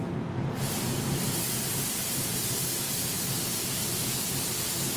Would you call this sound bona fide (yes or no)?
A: yes